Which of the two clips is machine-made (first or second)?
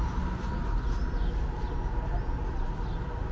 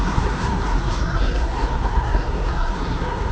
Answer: second